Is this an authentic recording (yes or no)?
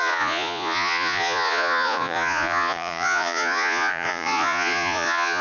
no